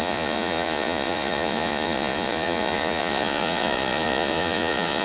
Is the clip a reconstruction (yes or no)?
yes